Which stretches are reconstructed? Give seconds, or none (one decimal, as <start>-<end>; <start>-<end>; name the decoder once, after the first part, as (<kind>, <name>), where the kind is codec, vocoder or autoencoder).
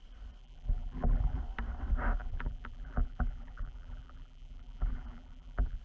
0.4-1.4 (vocoder, BigVGAN v2); 2.2-5.8